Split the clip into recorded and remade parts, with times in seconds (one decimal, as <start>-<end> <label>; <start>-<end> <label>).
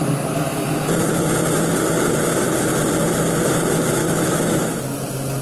0.0-4.0 recorded; 4.0-4.6 remade; 4.6-5.4 recorded